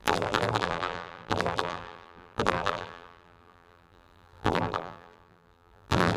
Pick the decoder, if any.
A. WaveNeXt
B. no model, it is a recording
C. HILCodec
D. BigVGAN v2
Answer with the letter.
D